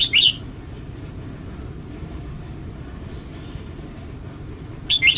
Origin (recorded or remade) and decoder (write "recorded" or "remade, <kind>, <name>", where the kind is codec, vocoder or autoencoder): recorded